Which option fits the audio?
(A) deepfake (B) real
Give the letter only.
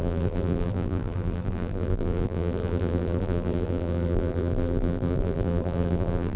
A